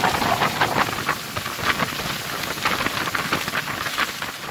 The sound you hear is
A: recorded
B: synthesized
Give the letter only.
A